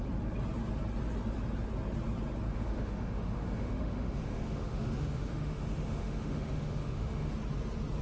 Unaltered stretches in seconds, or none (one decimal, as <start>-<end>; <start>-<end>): 0.0-2.5; 7.3-8.0